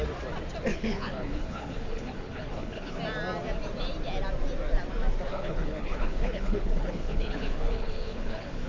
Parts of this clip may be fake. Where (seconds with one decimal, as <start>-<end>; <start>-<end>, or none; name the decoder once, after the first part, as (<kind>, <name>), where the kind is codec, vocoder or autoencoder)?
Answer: 0.7-3.0 (codec, HILCodec); 5.3-8.7